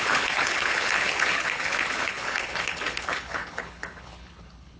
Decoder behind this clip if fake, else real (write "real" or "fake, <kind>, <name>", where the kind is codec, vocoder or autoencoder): fake, codec, HILCodec